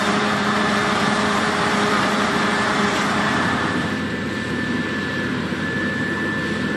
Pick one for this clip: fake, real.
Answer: fake